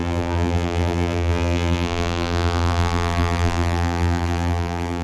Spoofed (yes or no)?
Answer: yes